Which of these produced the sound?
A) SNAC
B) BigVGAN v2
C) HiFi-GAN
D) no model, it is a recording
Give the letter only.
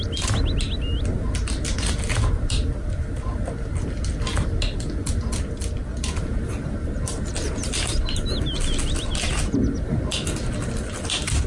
D